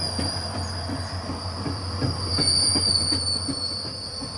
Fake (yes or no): no